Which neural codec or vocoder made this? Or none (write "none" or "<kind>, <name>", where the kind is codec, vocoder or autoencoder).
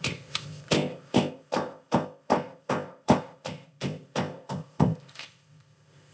codec, ZipCodec